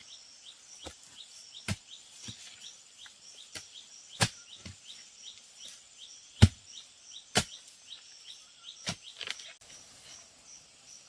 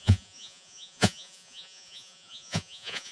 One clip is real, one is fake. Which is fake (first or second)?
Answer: second